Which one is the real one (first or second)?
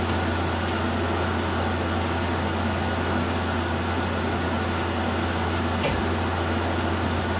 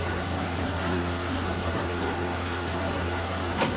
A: first